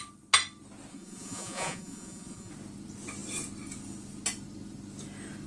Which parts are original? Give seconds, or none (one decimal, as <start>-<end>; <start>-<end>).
0.0-0.9; 2.5-5.5